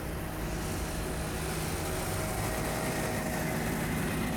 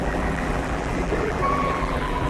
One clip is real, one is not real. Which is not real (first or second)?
second